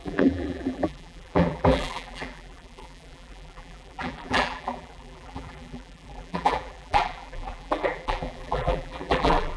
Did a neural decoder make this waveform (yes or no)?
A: yes